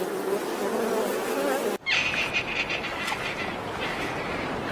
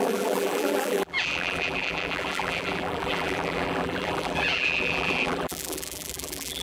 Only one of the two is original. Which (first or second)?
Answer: first